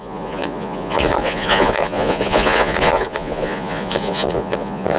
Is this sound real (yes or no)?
no